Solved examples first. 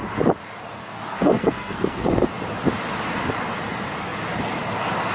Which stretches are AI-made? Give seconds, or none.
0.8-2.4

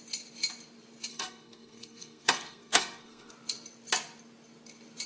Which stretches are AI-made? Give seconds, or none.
1.1-3.3

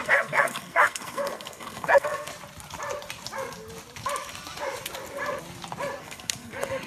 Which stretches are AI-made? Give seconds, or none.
0.0-2.3; 6.0-6.9

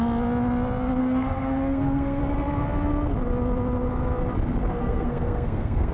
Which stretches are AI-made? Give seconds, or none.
1.0-2.2; 4.8-5.9

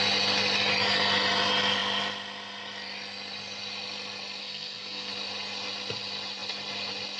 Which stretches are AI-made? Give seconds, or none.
4.4-5.1

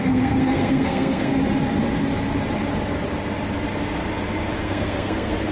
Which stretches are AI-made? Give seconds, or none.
0.0-1.3; 4.6-5.5